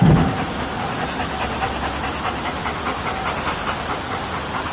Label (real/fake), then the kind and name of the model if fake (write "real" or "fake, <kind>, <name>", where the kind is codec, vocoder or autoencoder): real